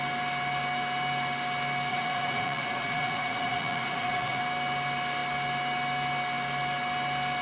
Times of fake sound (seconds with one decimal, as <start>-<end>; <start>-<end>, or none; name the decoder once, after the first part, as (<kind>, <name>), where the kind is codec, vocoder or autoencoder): 1.9-4.4 (vocoder, Vocos)